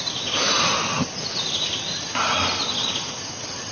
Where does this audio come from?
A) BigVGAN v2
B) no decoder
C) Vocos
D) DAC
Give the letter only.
B